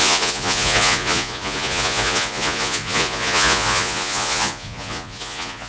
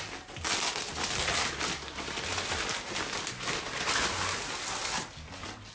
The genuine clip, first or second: second